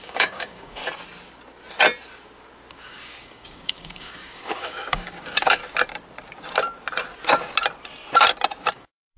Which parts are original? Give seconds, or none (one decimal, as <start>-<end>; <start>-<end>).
0.8-2.7; 5.6-8.7